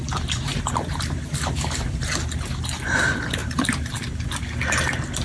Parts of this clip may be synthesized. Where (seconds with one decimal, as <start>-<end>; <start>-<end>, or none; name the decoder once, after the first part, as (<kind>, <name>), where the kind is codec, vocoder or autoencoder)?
0.5-2.1 (vocoder, BigVGAN v2); 3.4-3.9